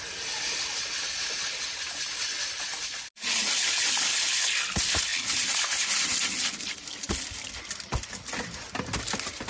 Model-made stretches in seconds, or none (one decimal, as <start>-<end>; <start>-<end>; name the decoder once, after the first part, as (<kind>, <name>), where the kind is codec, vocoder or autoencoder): none